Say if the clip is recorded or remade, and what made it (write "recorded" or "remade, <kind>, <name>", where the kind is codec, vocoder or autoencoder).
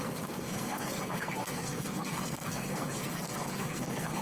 remade, codec, SNAC